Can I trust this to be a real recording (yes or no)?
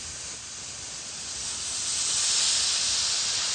yes